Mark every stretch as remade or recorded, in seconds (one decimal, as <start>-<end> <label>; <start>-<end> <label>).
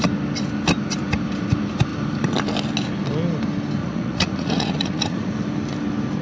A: 0.0-3.8 recorded; 3.8-5.3 remade; 5.3-6.2 recorded